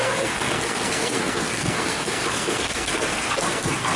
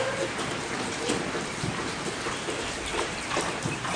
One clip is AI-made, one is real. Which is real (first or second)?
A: second